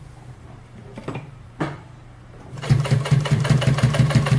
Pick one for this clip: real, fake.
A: fake